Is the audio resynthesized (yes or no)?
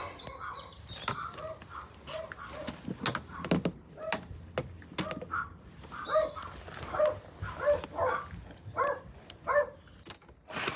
no